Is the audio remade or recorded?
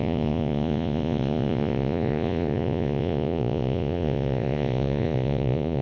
remade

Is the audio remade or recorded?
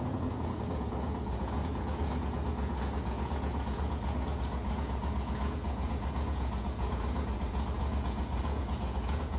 remade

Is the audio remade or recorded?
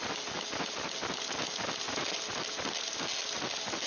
recorded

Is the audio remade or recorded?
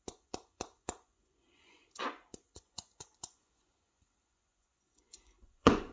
remade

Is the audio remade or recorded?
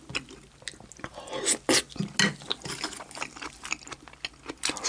recorded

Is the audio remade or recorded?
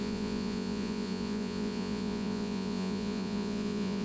remade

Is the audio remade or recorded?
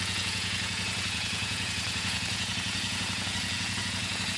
remade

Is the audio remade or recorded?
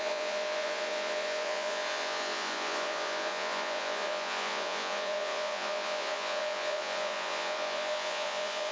remade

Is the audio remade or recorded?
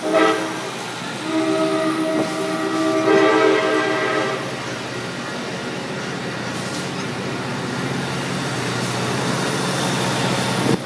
recorded